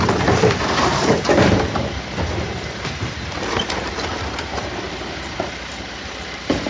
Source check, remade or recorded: remade